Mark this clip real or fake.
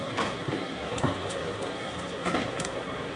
fake